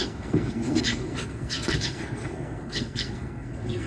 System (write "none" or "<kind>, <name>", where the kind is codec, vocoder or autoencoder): codec, SNAC